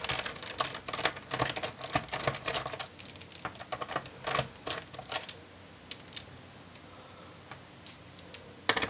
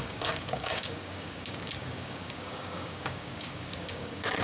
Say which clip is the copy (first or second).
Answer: second